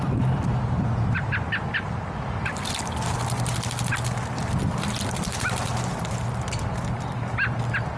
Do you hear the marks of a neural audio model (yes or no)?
no